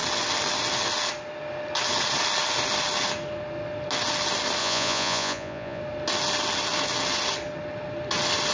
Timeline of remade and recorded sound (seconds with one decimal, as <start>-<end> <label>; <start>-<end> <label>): 0.0-4.6 recorded; 4.6-5.8 remade; 5.8-8.5 recorded